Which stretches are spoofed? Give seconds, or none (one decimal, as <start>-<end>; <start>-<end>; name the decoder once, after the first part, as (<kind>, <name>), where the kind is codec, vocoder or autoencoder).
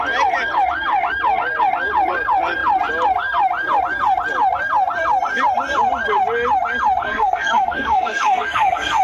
7.0-9.0 (codec, SNAC)